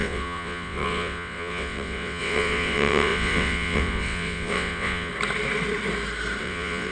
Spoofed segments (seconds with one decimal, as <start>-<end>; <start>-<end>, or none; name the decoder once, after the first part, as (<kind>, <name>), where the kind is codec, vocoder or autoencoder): 0.0-5.1 (vocoder, WaveNeXt); 6.4-6.9

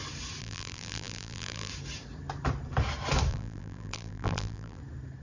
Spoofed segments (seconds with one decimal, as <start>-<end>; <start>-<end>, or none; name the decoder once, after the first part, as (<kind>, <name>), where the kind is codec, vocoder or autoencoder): 0.4-1.7 (vocoder, BigVGAN v2); 3.3-4.8

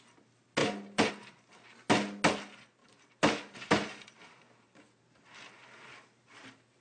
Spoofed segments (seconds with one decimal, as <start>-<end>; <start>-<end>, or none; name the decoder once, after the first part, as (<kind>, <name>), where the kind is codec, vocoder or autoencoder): 0.6-1.1 (vocoder, BigVGAN v2); 2.8-6.8

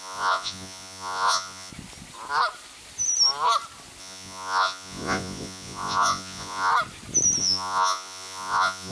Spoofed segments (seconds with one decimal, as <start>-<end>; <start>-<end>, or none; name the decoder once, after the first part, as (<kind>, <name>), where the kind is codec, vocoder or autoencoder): 0.0-1.7 (vocoder, Vocos); 4.0-6.7; 7.4-8.9

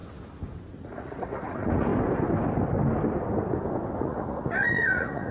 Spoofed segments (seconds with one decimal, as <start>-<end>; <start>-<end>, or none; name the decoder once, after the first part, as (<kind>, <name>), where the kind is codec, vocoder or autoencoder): 0.8-1.9 (vocoder, Vocos); 4.0-5.3